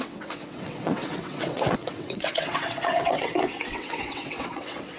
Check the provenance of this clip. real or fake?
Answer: fake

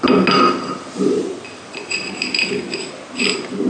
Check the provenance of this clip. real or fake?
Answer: real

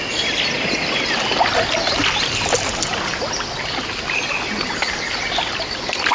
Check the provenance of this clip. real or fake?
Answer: real